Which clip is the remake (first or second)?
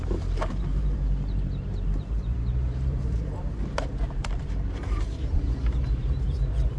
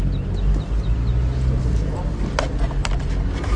first